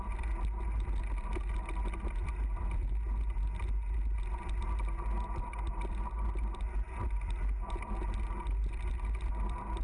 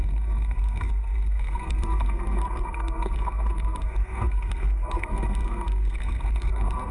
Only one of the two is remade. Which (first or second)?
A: second